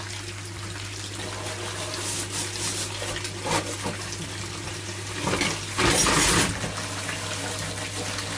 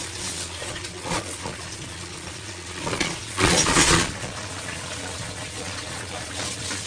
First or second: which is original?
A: first